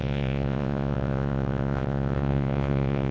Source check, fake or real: fake